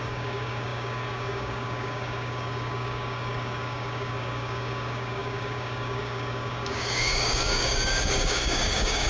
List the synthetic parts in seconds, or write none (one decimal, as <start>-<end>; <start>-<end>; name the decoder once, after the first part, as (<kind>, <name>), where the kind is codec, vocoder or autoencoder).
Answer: 0.0-9.1 (codec, DAC)